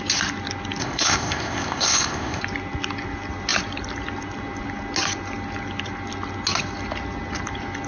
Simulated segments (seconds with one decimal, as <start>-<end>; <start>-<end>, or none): 0.8-2.4